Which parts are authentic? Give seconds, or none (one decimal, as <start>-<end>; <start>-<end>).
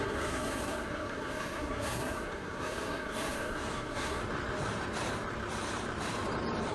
4.2-6.7